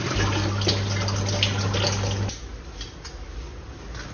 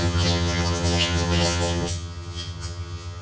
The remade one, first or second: second